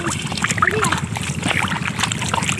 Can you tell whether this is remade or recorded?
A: remade